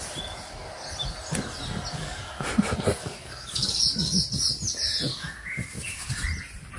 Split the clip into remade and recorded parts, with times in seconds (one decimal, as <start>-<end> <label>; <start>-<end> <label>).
0.0-1.9 recorded; 1.9-2.5 remade; 2.5-3.0 recorded; 3.0-3.8 remade; 3.8-5.1 recorded; 5.1-6.1 remade; 6.1-6.8 recorded